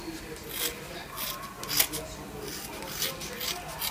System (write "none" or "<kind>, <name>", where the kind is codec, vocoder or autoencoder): none